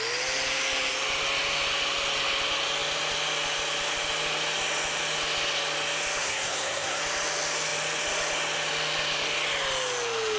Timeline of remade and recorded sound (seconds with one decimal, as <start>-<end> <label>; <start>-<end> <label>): 0.0-6.2 recorded; 6.2-7.0 remade; 7.0-10.4 recorded